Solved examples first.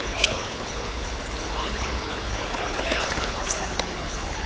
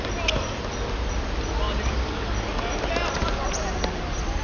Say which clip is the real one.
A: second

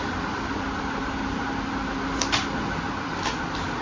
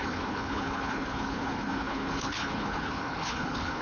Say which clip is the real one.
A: first